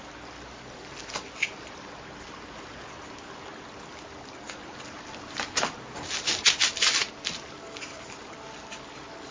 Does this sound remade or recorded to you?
recorded